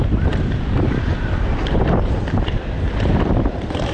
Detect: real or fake fake